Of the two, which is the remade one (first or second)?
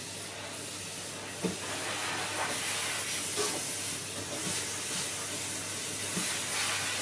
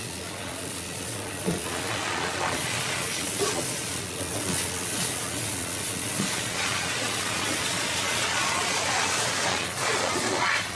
second